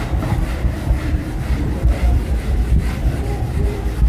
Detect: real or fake fake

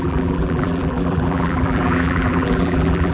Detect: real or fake fake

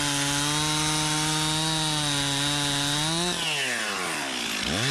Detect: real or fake real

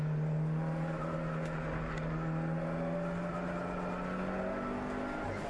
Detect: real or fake real